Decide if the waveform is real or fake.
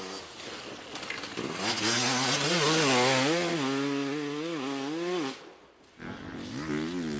real